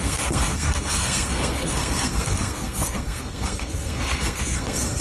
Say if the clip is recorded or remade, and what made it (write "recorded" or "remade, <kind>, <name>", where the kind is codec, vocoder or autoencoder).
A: remade, codec, SNAC